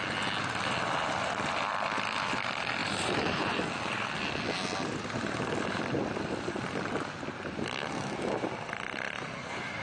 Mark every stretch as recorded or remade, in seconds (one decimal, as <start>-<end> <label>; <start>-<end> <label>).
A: 0.0-2.8 recorded; 2.8-3.6 remade; 3.6-9.8 recorded